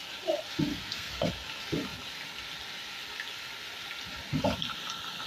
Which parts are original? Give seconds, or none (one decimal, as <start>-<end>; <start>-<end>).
0.0-0.7; 1.3-5.3